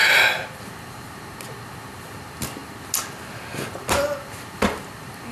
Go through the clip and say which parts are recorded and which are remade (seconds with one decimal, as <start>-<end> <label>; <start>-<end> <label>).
0.0-5.3 recorded